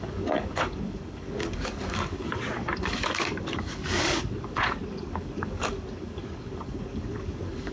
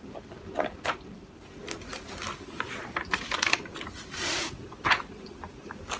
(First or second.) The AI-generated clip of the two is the first